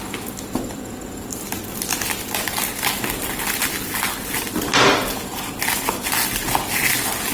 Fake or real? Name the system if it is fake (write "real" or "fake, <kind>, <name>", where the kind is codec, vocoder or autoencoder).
real